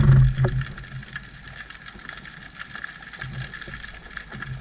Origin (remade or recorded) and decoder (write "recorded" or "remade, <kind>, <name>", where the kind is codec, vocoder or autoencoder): recorded